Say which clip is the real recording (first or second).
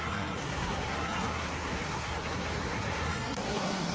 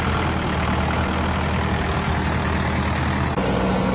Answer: second